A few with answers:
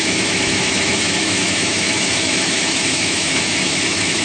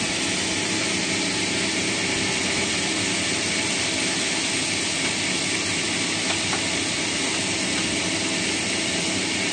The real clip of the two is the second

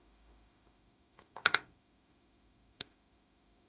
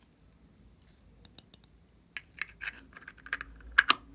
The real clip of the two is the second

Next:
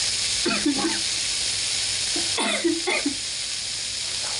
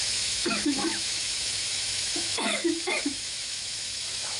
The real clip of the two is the first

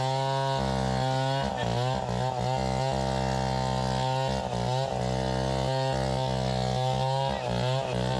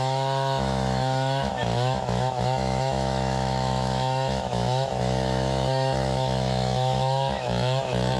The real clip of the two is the first